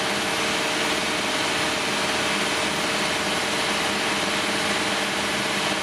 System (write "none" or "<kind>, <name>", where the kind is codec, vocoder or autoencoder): none